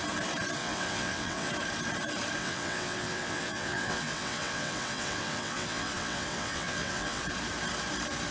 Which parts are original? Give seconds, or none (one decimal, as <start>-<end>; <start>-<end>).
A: 0.0-0.6; 1.5-2.4; 7.2-8.3